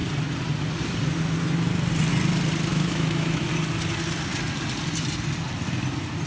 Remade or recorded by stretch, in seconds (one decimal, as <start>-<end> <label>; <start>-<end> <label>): 0.0-2.7 recorded; 2.7-3.5 remade; 3.5-6.3 recorded